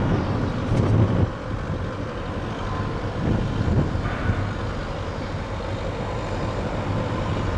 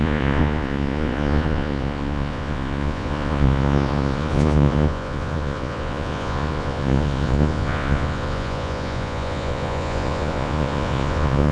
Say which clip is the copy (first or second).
second